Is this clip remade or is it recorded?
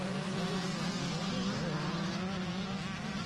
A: recorded